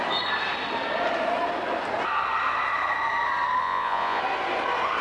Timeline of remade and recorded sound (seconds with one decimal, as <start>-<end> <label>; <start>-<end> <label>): 0.0-3.6 recorded; 3.6-4.2 remade; 4.2-5.0 recorded